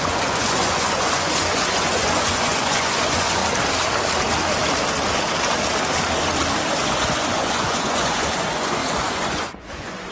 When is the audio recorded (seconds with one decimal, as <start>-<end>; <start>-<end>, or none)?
3.4-6.7